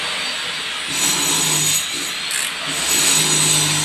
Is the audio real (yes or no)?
yes